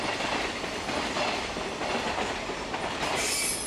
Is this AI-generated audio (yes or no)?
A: yes